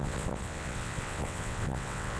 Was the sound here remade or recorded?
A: remade